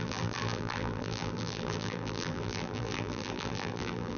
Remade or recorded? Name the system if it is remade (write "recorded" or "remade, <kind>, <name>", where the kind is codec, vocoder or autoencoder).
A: remade, vocoder, BigVGAN v2